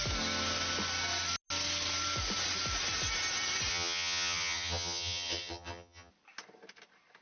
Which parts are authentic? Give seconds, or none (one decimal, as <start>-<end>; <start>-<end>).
0.0-3.7; 6.1-7.2